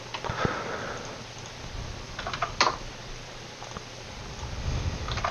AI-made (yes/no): no